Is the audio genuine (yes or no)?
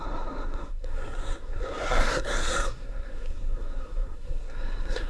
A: no